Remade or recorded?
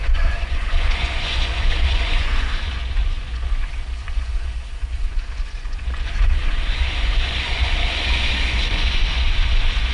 remade